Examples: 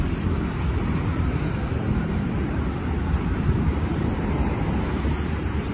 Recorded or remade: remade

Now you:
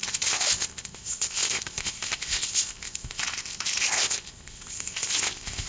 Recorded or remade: remade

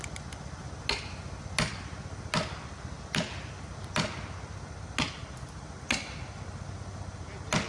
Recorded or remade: recorded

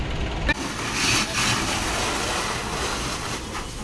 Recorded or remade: recorded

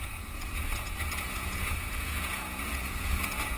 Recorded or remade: remade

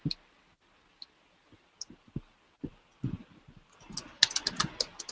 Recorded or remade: recorded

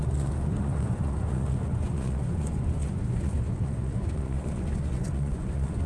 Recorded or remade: remade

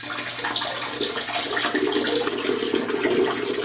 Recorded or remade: recorded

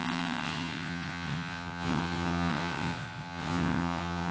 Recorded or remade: remade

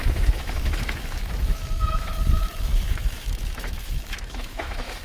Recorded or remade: remade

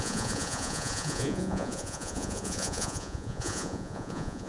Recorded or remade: remade